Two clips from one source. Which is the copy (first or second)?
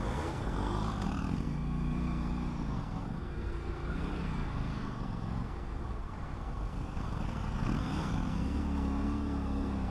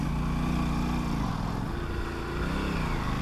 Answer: first